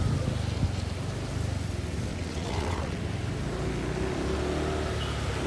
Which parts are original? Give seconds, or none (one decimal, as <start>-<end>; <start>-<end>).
0.0-2.1; 3.0-5.5